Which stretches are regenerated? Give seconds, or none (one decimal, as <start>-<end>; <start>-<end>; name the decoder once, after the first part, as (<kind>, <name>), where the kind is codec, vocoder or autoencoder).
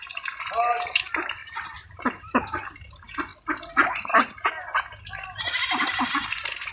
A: 1.4-2.9 (vocoder, BigVGAN v2)